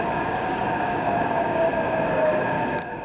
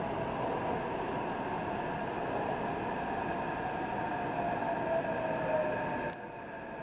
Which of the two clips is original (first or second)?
second